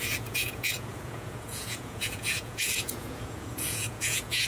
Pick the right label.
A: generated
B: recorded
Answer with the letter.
A